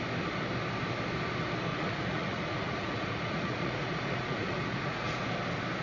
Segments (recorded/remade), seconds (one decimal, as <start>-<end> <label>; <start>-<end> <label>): 0.0-1.7 recorded; 1.7-5.2 remade; 5.2-5.8 recorded